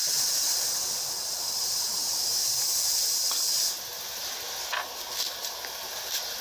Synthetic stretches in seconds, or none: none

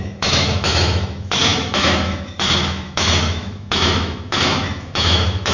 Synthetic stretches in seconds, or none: 0.0-5.5 (autoencoder, DAC-VAE)

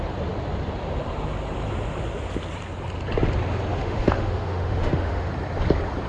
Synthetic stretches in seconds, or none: 3.7-5.3 (autoencoder, DAC-VAE)

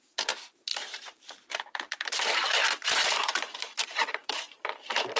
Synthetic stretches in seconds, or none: 0.7-3.8 (vocoder, BigVGAN v2); 4.2-5.2

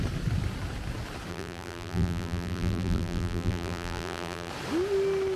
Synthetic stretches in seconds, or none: 1.3-4.5 (vocoder, BigVGAN v2)

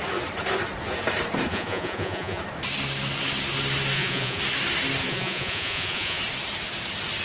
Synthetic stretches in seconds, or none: 1.5-2.4 (vocoder, Vocos); 3.9-4.4; 5.0-6.2